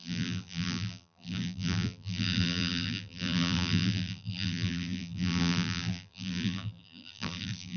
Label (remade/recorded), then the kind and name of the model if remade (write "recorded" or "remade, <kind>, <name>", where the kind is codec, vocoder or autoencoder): remade, vocoder, BigVGAN v2